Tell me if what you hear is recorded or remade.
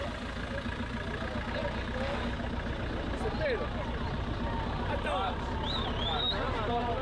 recorded